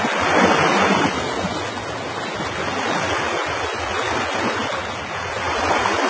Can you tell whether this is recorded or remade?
recorded